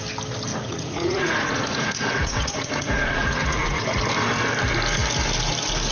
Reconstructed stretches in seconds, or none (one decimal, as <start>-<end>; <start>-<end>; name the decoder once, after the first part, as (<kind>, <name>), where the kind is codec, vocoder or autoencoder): 0.5-4.0 (vocoder, Vocos)